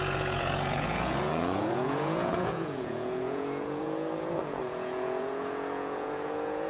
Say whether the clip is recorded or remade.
remade